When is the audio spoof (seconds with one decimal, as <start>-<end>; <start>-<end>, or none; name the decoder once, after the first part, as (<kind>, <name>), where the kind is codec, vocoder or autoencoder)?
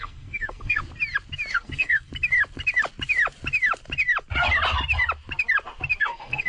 0.0-0.8 (codec, SNAC); 1.5-2.1; 6.0-6.5